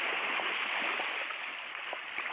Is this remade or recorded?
recorded